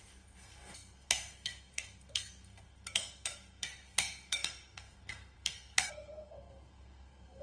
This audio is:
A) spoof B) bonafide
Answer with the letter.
A